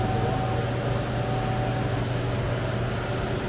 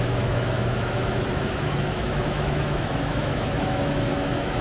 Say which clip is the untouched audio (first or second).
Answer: first